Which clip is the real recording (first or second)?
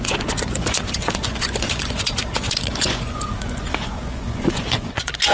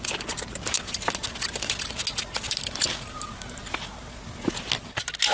second